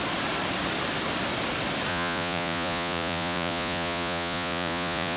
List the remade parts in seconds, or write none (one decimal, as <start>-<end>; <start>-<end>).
1.9-5.2

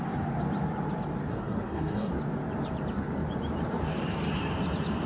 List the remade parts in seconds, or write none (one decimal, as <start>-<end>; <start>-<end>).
1.3-2.1

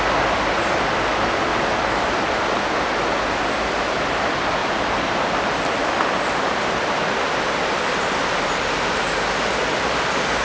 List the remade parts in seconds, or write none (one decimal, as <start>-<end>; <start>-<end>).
1.5-2.3; 4.6-5.9